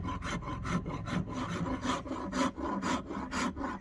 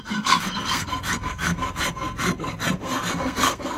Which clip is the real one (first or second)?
first